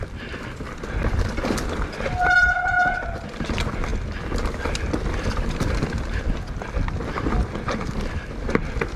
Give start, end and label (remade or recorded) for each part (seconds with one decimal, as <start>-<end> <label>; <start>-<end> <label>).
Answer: 0.0-9.0 recorded